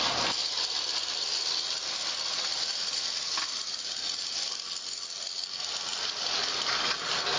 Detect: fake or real real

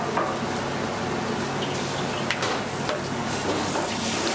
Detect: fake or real real